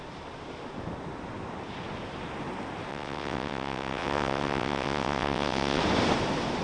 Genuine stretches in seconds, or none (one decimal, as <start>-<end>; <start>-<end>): 0.0-2.9; 5.8-6.6